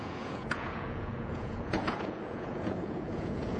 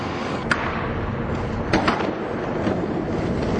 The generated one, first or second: first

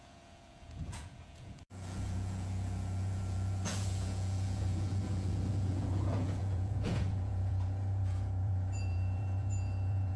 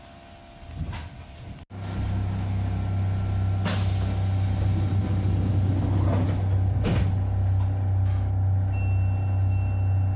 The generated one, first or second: first